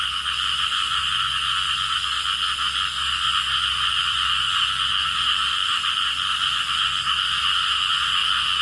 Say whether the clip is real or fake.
real